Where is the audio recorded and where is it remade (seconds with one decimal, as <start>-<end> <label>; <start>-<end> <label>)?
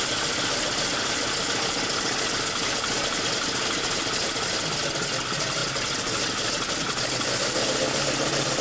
0.0-8.6 recorded